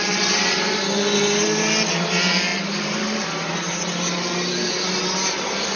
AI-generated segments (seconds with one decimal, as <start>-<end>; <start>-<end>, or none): none

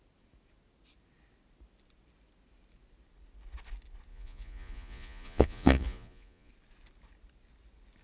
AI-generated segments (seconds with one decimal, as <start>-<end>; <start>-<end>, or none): 4.1-6.5

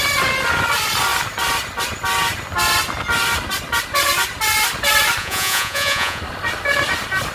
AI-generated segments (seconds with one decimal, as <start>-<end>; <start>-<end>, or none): 5.2-6.2